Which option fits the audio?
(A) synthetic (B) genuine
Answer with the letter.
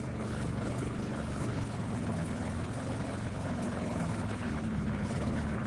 A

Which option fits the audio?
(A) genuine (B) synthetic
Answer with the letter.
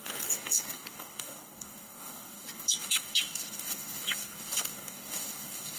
B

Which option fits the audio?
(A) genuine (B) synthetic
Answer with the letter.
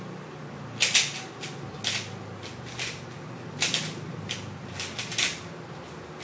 A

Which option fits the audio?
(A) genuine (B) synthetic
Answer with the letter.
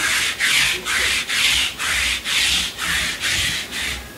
A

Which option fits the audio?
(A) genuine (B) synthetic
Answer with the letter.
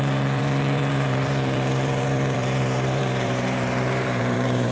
B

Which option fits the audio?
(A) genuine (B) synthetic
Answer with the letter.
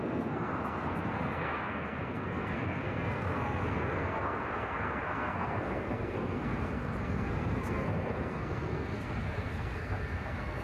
B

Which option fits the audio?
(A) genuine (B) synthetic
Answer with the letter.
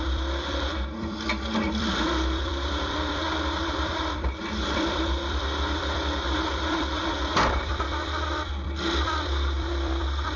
B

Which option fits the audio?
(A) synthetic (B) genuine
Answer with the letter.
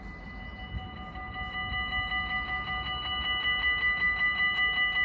B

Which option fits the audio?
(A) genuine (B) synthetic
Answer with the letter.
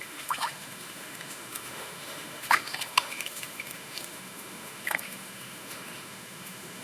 B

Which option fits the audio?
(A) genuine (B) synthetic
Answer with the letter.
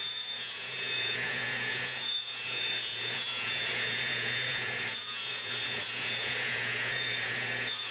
B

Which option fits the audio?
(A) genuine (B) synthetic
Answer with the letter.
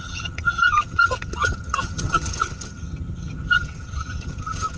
B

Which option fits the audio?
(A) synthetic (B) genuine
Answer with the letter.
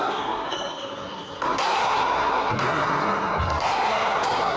A